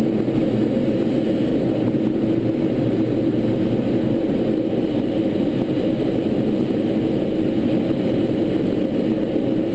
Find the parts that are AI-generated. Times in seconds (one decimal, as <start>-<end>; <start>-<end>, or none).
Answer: none